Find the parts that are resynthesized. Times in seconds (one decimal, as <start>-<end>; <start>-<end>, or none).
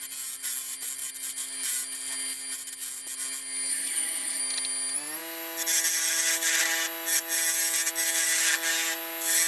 3.7-4.4